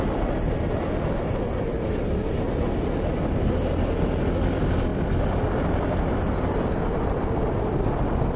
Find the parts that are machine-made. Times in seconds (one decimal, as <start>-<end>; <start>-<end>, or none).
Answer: none